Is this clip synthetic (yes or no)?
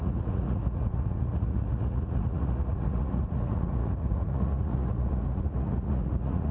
yes